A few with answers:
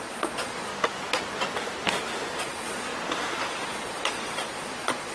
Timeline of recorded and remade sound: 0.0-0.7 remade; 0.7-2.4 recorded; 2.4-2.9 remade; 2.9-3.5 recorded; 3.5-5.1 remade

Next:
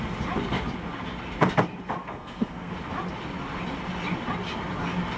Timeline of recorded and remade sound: 0.0-2.0 recorded; 2.0-2.7 remade; 2.7-5.2 recorded

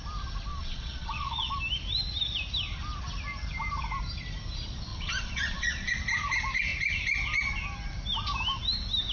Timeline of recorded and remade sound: 0.0-0.5 recorded; 0.5-1.5 remade; 1.5-4.9 recorded; 4.9-5.9 remade; 5.9-9.1 recorded

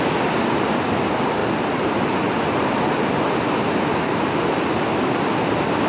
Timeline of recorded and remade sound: 0.0-5.9 recorded

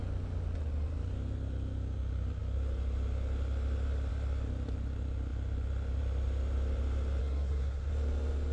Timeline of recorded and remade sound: 0.0-7.2 recorded; 7.2-7.9 remade; 7.9-8.5 recorded